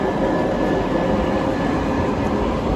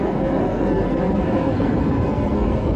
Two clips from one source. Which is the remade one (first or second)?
second